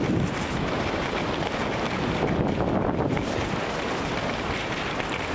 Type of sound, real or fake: real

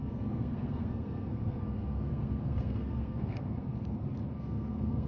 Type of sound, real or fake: fake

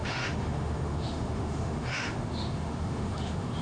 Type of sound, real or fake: fake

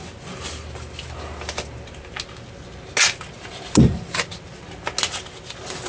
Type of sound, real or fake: real